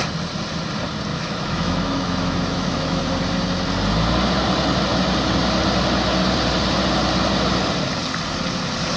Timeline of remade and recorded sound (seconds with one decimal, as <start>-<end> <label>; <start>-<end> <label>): 0.0-1.1 recorded; 1.1-3.0 remade; 3.0-9.0 recorded